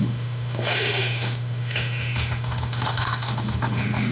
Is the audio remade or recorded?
remade